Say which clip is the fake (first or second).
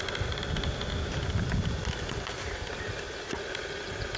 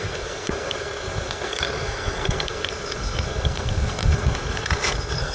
second